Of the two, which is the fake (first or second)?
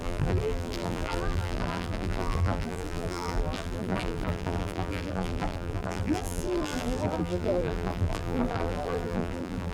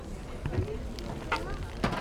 first